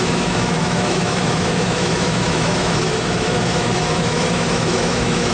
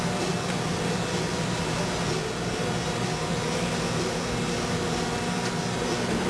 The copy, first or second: first